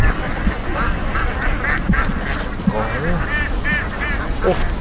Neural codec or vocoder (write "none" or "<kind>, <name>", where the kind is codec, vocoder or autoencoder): none